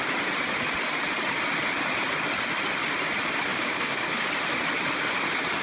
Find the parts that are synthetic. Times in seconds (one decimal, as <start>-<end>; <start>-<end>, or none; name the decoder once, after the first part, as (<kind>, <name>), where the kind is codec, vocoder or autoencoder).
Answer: 3.5-4.3 (codec, DAC)